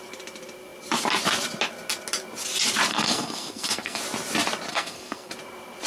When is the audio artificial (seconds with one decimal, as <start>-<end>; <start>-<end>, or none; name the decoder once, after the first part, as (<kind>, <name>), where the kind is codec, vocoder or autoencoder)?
2.9-4.0 (codec, SNAC); 4.7-5.3